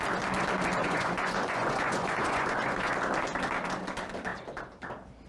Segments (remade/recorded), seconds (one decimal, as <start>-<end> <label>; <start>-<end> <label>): 0.0-0.8 recorded; 0.8-2.9 remade; 2.9-5.3 recorded

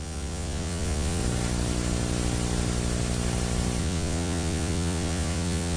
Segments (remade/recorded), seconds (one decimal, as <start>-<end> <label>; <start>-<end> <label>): 0.0-1.2 remade; 1.2-3.8 recorded; 3.8-5.8 remade

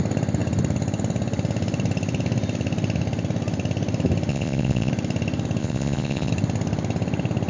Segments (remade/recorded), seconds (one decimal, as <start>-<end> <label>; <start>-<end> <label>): 0.0-4.3 recorded; 4.3-4.9 remade; 4.9-5.6 recorded; 5.6-6.3 remade; 6.3-7.5 recorded

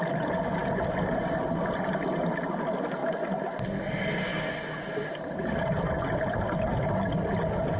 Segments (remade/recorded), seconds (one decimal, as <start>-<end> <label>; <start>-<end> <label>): 0.0-7.8 recorded